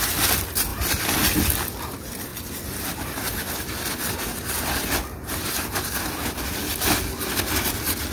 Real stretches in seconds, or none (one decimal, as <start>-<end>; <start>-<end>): 0.0-8.1